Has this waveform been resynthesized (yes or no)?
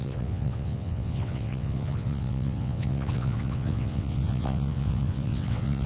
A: yes